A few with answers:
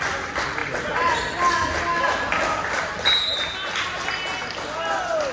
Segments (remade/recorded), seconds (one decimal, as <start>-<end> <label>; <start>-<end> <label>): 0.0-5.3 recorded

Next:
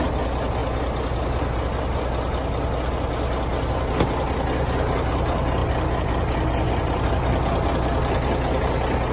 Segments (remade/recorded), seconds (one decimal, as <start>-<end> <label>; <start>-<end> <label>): 0.0-9.1 recorded

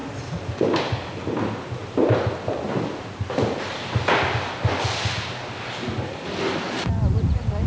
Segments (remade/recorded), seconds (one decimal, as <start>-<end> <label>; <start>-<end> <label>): 0.0-0.8 remade; 0.8-7.7 recorded